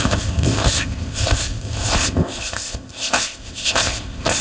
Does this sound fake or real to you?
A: fake